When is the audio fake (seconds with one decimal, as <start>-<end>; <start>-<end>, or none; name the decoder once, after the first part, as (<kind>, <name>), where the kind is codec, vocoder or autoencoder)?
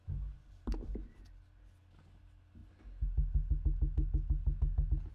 none